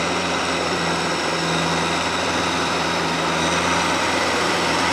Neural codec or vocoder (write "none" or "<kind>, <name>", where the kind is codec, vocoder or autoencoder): vocoder, BigVGAN v2